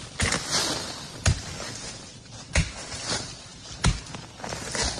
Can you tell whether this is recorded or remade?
recorded